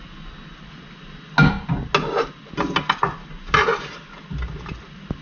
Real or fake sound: real